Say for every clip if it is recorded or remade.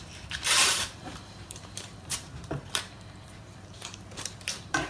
remade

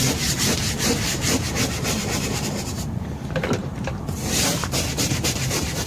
remade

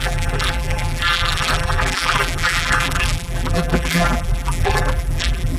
remade